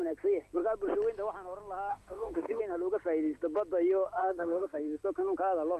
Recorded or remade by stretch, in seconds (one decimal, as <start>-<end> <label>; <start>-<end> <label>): 0.0-1.9 recorded; 1.9-2.6 remade; 2.6-4.2 recorded; 4.2-5.0 remade; 5.0-5.8 recorded